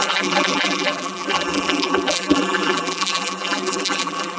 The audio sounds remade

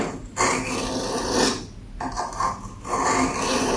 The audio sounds recorded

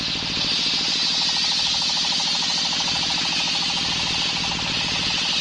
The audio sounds recorded